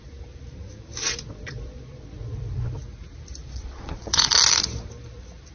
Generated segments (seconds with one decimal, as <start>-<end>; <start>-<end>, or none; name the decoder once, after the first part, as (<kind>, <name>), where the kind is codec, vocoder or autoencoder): 1.0-2.8 (vocoder, Vocos); 3.4-4.3